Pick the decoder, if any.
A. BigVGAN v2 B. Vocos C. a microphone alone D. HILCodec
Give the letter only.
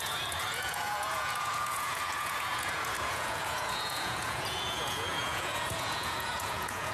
B